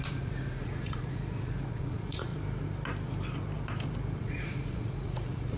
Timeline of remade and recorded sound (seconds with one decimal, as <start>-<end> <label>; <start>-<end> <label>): 0.0-2.3 remade; 2.3-4.2 recorded; 4.2-5.6 remade